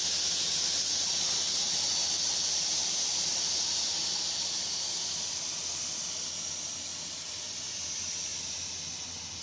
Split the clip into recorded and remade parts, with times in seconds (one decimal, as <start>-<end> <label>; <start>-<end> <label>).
0.0-9.4 recorded